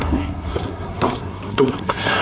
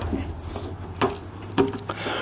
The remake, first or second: first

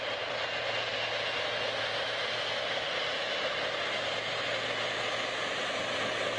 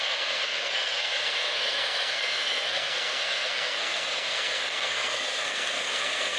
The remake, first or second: second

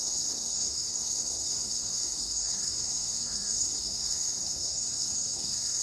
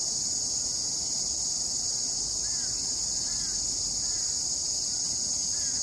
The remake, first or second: first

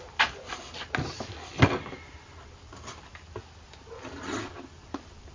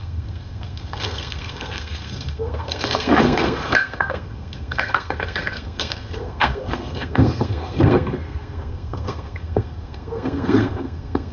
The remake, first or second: second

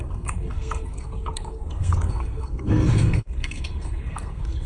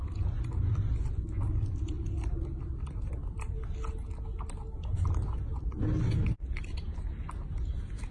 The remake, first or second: first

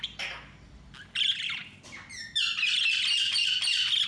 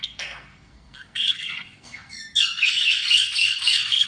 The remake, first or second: second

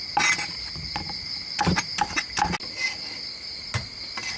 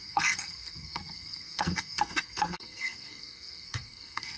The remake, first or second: second